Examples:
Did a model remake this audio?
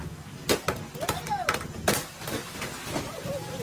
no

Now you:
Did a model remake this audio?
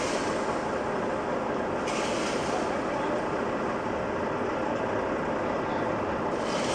no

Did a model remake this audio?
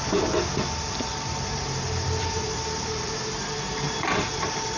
no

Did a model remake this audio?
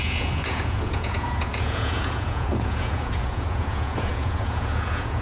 yes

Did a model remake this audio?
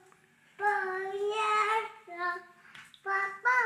no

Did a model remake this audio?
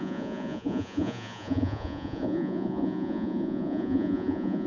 yes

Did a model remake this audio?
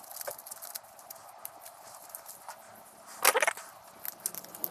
no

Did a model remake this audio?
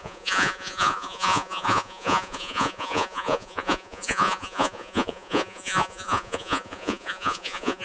yes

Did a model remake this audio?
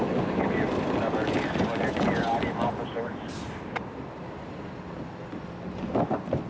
no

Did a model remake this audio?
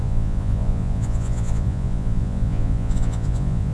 yes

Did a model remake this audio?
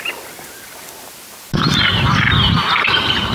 no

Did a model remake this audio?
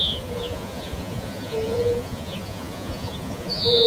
yes